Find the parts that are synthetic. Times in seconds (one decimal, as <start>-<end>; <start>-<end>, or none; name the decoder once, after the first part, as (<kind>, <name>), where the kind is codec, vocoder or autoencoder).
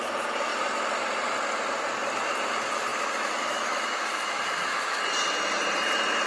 2.9-5.0 (autoencoder, DAC-VAE)